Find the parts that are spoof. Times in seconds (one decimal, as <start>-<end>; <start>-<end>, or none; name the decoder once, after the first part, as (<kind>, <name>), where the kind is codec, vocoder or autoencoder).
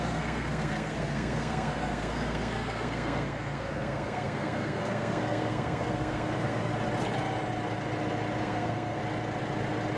0.0-6.7 (codec, SNAC); 8.4-9.0